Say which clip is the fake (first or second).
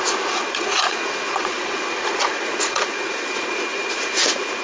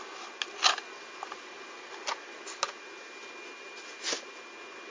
first